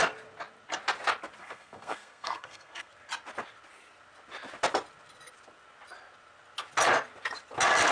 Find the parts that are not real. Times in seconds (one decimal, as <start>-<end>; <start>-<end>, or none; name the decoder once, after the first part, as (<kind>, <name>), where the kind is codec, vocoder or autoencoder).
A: 1.4-2.9 (codec, SNAC)